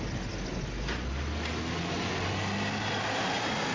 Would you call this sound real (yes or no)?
yes